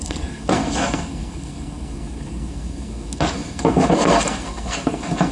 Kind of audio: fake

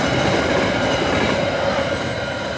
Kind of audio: real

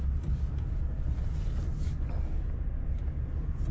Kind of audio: real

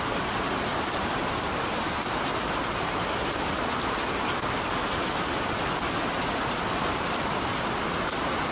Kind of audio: real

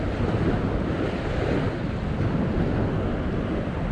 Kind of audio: real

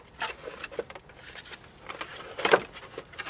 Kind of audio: real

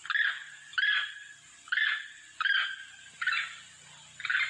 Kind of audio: real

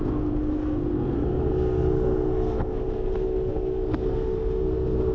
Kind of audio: fake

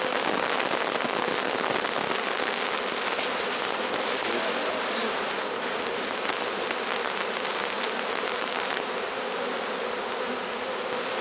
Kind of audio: real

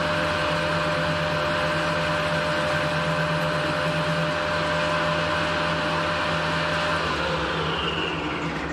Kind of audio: real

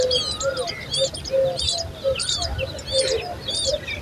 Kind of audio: real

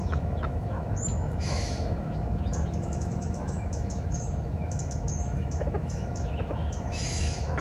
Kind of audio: fake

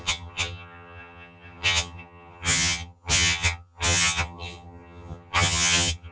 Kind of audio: fake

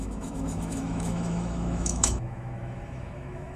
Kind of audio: fake